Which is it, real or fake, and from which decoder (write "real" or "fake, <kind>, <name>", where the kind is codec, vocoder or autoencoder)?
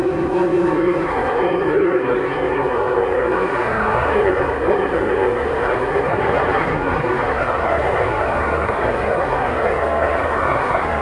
fake, codec, SNAC